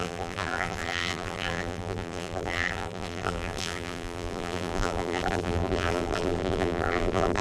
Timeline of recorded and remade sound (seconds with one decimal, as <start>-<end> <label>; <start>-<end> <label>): 0.0-7.4 remade